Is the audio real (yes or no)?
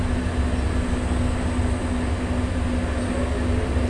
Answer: yes